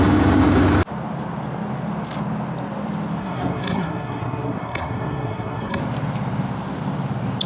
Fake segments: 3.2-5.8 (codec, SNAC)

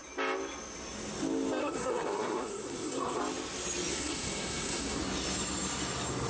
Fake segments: 1.6-3.2 (codec, SNAC); 3.9-5.0

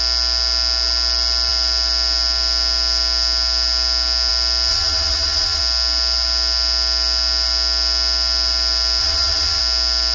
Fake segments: 4.7-5.6 (vocoder, Vocos); 9.0-9.6

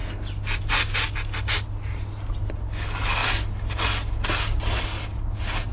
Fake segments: none